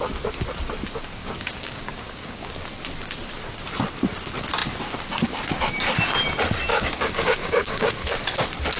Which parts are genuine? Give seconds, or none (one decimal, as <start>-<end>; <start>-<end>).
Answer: 0.0-1.2; 2.5-6.7; 7.9-8.8